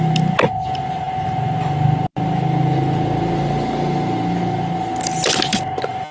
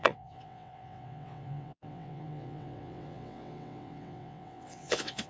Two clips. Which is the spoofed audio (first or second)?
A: second